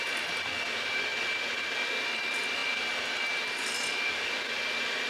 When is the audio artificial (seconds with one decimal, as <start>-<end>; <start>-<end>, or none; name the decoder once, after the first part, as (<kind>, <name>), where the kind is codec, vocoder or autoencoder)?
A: none